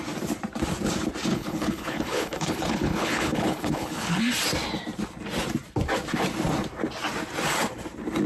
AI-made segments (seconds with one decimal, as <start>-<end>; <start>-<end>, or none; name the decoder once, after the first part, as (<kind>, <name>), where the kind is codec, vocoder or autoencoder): 1.3-4.2 (codec, HILCodec)